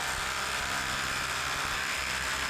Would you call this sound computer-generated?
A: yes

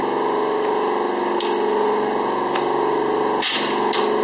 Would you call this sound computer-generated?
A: no